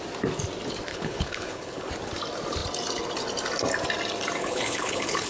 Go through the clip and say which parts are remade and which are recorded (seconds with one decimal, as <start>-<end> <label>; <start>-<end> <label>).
0.0-0.9 recorded; 0.9-1.9 remade; 1.9-4.4 recorded; 4.4-5.3 remade